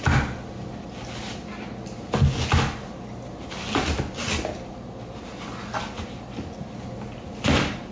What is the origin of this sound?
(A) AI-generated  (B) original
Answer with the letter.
B